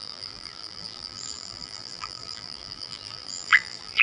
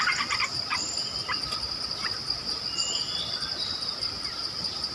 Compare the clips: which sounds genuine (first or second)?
second